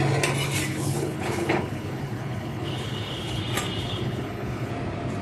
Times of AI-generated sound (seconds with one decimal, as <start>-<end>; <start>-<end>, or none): 0.7-3.4; 3.8-4.7